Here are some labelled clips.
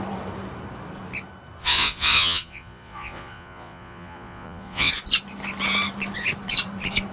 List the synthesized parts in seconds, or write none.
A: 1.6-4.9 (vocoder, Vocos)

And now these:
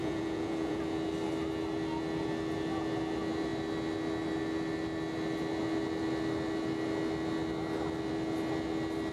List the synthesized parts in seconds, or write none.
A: 0.0-0.8 (vocoder, Vocos)